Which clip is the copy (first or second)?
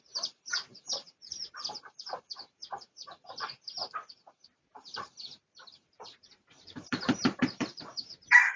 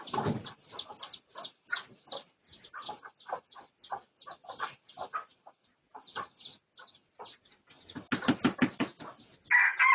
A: first